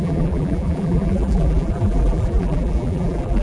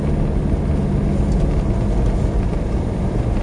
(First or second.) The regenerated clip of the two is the first